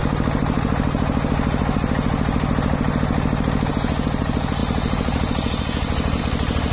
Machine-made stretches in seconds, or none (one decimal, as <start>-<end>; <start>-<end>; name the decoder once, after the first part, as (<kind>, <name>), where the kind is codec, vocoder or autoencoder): none